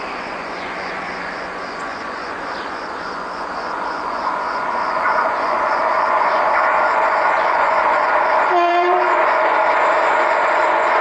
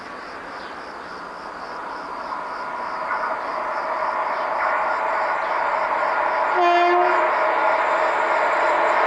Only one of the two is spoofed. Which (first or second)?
first